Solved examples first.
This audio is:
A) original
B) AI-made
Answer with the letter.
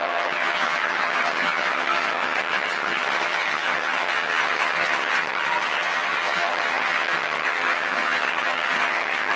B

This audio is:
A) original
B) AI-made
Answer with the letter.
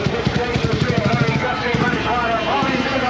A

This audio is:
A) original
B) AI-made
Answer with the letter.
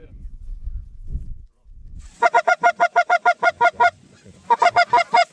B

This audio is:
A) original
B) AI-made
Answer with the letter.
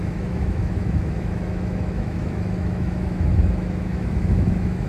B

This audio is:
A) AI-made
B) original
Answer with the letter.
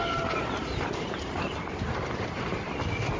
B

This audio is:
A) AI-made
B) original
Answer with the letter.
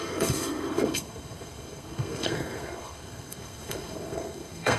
A